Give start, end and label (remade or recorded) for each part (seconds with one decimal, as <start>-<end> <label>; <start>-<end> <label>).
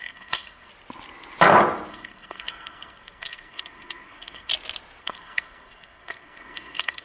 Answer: 0.0-0.7 remade; 0.7-1.9 recorded; 1.9-4.5 remade; 4.5-5.0 recorded; 5.0-7.0 remade